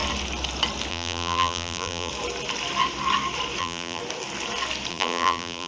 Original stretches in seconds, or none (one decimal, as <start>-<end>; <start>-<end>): 0.0-0.9; 2.1-3.6; 4.0-4.9